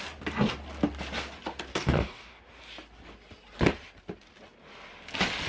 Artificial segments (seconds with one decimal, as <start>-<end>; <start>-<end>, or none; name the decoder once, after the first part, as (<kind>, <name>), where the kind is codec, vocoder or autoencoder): 1.7-2.4 (codec, DAC)